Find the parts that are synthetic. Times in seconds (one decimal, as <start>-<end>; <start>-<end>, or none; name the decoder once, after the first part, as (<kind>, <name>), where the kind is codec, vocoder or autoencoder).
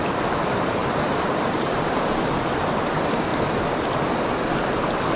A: 0.8-2.8 (vocoder, BigVGAN v2)